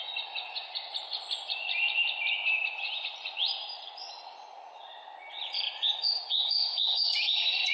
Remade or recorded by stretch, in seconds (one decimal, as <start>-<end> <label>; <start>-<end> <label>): 0.0-0.9 remade; 0.9-2.8 recorded; 2.8-7.7 remade